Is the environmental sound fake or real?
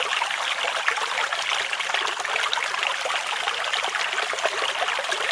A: real